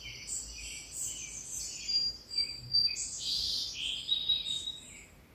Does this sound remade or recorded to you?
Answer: recorded